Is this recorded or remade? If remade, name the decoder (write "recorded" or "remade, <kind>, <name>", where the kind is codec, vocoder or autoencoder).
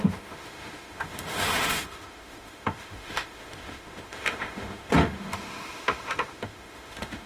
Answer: remade, autoencoder, DAC-VAE